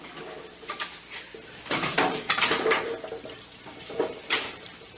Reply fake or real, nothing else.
fake